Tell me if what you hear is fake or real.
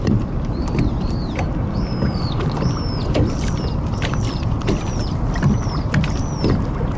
real